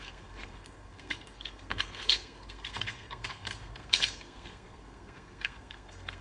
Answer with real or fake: fake